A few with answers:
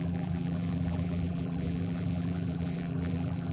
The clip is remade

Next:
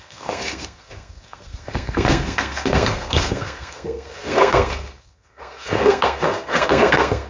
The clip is remade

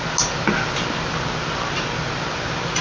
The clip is recorded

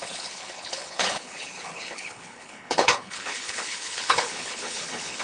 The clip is remade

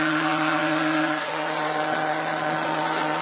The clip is remade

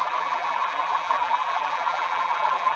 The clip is remade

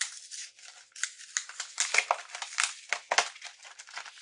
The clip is recorded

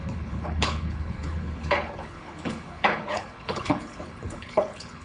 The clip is remade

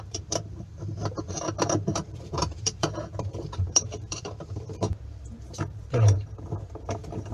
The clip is remade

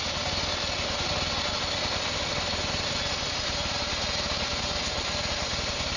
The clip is recorded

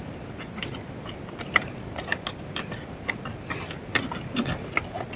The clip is recorded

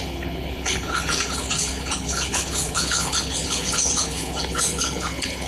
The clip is remade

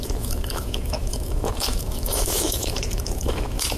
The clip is remade